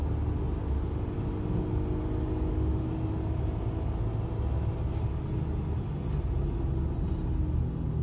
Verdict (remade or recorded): recorded